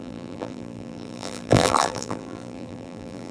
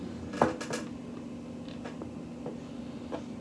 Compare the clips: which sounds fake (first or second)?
first